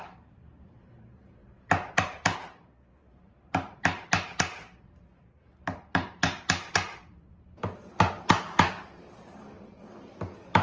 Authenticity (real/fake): fake